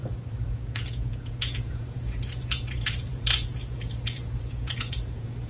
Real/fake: fake